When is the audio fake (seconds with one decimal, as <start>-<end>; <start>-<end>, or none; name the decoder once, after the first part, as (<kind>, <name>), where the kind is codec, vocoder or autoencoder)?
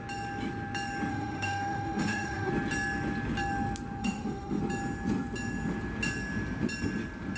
1.1-2.5 (autoencoder, DAC-VAE); 4.0-4.6